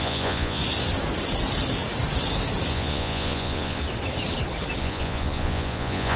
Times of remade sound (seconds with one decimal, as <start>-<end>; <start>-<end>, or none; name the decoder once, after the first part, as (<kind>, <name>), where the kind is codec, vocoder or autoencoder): 0.0-0.6 (vocoder, Vocos); 2.7-3.8; 4.8-6.2